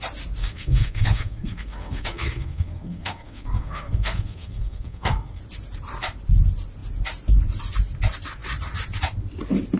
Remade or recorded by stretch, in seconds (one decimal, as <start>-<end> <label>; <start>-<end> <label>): 0.0-0.4 recorded; 0.4-5.4 remade; 5.4-9.8 recorded